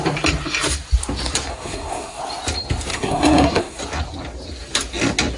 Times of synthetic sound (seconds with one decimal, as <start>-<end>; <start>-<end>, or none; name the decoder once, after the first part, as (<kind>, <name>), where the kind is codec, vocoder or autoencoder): 1.5-2.2 (codec, SNAC); 2.9-3.8